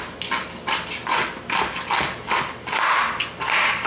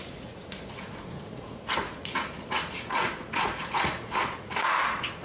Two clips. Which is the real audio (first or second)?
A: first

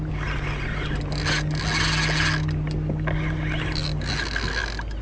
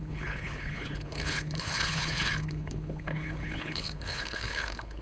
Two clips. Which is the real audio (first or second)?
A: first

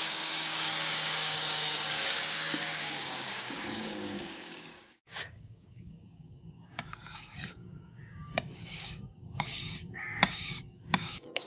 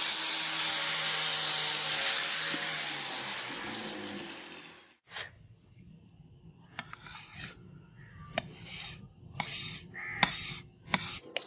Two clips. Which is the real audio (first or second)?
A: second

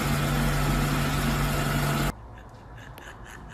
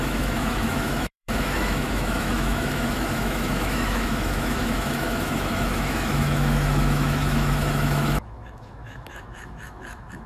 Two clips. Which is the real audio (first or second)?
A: first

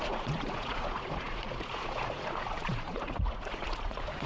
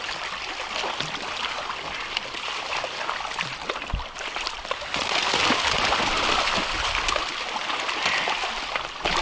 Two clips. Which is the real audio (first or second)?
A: second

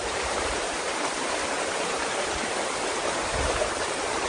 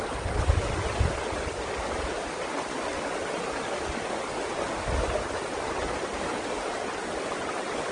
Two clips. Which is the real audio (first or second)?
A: second